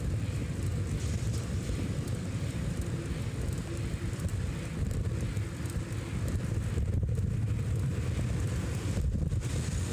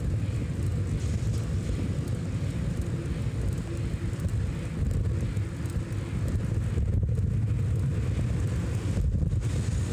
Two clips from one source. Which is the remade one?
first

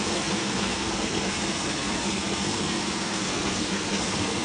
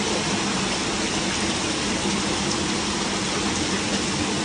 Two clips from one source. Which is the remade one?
first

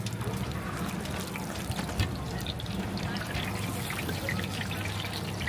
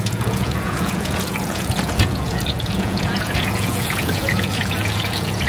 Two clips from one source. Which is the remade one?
second